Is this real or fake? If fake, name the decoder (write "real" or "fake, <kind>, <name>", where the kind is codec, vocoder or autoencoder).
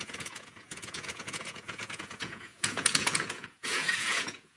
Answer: fake, vocoder, Vocos